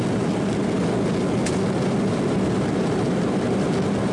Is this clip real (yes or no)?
yes